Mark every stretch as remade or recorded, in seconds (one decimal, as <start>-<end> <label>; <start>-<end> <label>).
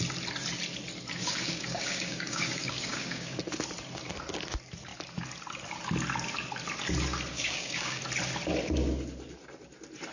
0.0-1.2 recorded; 1.2-3.4 remade; 3.4-7.3 recorded; 7.3-8.0 remade; 8.0-10.1 recorded